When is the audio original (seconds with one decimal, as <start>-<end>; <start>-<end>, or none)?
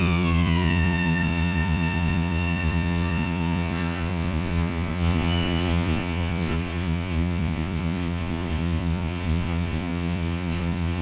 none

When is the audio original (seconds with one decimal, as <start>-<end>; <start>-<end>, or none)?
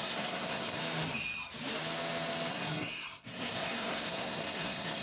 0.8-2.5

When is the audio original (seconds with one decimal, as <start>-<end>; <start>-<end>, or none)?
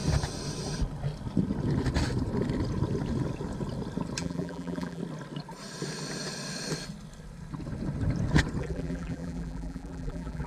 0.0-4.2; 5.0-8.6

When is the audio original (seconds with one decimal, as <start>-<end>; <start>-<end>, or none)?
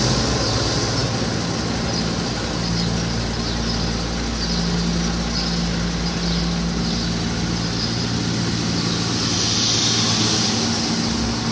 0.0-11.5